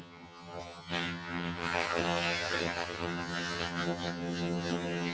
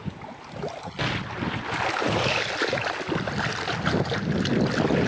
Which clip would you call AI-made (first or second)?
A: first